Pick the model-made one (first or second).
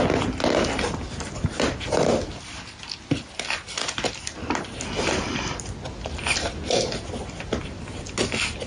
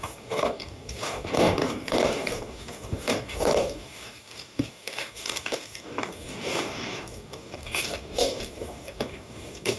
second